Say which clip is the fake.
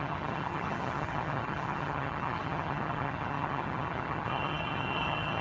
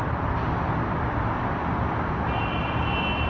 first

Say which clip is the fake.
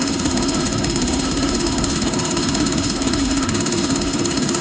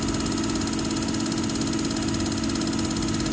first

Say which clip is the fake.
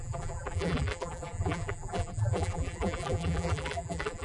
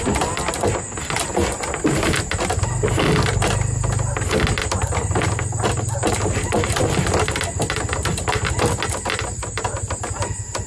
first